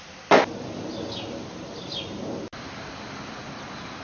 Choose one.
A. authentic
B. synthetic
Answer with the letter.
A